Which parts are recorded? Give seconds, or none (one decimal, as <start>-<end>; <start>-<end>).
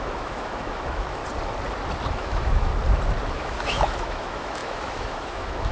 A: 1.2-2.1; 2.7-3.3